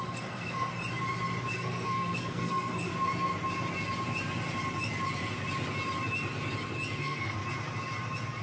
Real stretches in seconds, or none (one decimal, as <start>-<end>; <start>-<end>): 0.7-1.5; 2.9-7.0; 7.4-8.4